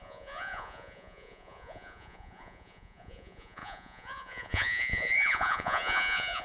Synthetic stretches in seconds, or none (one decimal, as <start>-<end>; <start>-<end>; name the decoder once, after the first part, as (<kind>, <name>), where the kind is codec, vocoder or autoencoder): 0.0-6.4 (vocoder, Vocos)